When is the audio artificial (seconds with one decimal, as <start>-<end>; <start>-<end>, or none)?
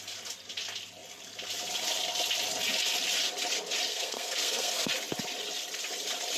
3.9-4.9